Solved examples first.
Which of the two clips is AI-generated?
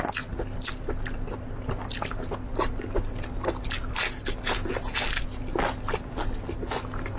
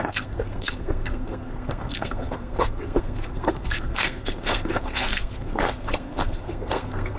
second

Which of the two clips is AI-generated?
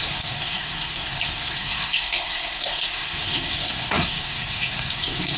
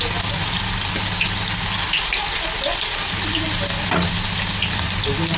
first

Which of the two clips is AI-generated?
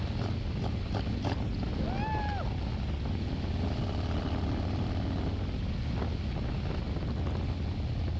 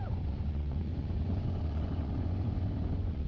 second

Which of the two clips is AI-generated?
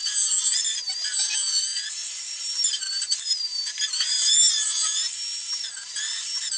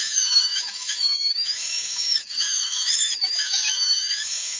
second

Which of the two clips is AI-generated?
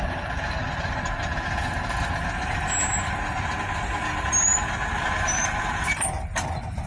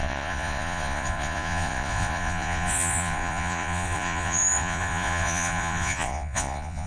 second